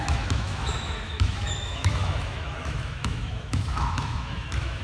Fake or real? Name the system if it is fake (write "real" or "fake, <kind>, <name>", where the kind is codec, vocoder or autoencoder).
fake, autoencoder, DAC-VAE